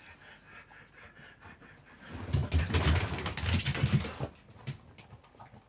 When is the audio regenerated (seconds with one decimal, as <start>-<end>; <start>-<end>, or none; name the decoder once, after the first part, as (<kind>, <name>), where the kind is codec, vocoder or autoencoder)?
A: none